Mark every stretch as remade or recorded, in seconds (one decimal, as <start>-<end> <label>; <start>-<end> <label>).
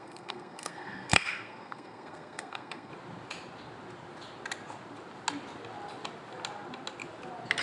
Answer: 0.0-2.9 remade; 2.9-7.6 recorded